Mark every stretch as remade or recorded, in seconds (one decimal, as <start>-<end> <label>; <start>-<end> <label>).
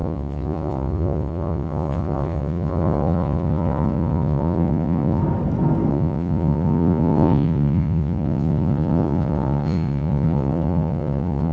0.0-5.2 remade; 5.2-5.9 recorded; 5.9-11.5 remade